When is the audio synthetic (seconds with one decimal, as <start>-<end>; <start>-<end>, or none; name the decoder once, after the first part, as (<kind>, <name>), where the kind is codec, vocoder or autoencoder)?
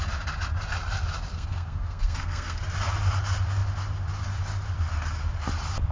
1.3-2.6 (codec, SNAC)